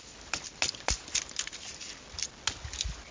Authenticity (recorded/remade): recorded